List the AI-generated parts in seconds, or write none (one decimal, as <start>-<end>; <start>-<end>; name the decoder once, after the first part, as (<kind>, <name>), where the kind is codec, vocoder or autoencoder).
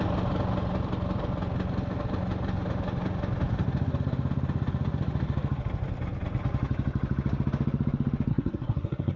8.3-9.2 (codec, SNAC)